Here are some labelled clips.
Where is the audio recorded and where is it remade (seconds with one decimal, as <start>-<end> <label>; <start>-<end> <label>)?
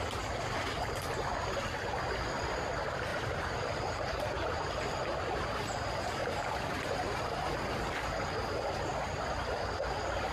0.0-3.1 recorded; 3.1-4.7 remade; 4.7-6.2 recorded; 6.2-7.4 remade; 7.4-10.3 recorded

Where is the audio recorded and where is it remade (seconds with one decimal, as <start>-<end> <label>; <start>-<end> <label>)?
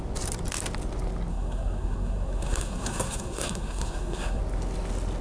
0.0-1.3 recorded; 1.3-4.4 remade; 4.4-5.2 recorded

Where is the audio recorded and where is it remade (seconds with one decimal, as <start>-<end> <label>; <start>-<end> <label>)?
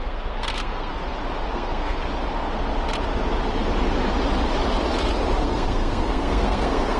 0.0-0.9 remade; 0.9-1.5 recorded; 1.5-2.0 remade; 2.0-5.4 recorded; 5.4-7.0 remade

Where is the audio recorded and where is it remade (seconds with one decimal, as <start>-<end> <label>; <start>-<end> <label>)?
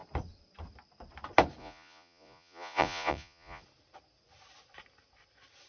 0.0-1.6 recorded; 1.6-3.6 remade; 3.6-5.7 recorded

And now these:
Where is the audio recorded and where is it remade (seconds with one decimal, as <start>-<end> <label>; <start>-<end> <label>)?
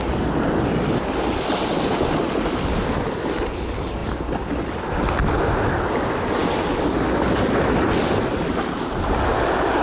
0.0-9.8 recorded